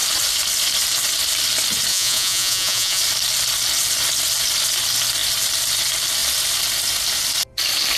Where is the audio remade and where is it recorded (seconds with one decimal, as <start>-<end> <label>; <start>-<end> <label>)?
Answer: 0.0-1.9 recorded; 1.9-3.0 remade; 3.0-8.0 recorded